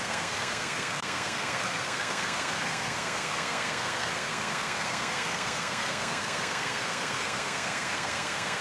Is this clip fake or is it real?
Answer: fake